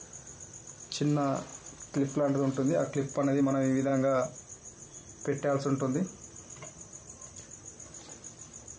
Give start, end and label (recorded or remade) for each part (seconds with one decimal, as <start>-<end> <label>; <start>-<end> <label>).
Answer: 0.0-3.9 recorded; 3.9-5.1 remade; 5.1-8.8 recorded